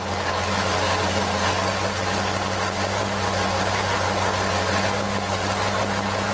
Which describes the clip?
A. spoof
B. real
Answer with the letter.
B